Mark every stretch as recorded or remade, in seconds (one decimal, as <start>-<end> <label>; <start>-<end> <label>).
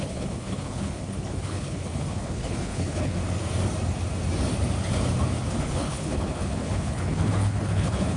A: 0.0-3.2 remade; 3.2-5.6 recorded; 5.6-8.2 remade